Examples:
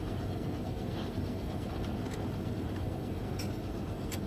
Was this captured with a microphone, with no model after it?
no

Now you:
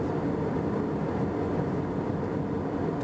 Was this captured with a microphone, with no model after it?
yes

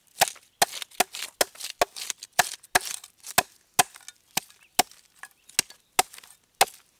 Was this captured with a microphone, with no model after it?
yes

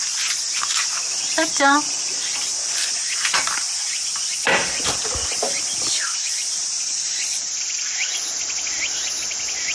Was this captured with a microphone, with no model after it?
yes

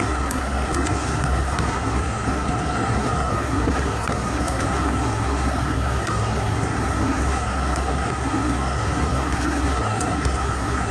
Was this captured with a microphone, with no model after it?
no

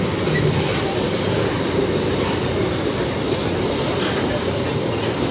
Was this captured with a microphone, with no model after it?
yes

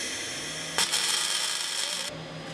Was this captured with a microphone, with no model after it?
yes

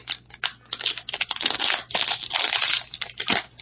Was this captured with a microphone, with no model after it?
yes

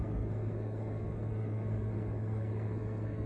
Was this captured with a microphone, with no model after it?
no